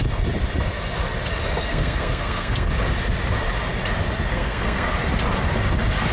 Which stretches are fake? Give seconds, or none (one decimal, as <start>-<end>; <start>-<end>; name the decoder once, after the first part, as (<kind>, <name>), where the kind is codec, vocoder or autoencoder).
1.7-2.7 (codec, SNAC); 4.3-4.9